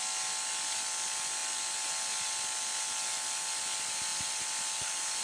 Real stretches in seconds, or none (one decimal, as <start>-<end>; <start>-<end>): 0.0-5.2